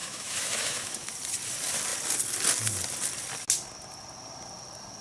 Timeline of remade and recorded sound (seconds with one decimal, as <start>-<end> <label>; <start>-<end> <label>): 0.0-1.1 remade; 1.1-5.0 recorded